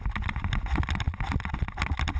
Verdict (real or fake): real